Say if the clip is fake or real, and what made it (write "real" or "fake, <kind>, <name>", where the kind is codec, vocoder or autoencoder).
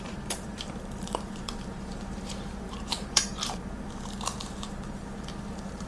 fake, vocoder, BigVGAN v2